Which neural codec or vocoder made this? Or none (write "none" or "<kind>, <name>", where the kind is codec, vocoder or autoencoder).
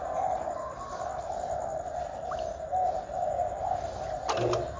none